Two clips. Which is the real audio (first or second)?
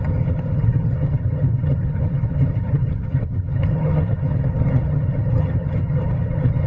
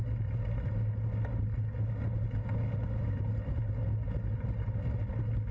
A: second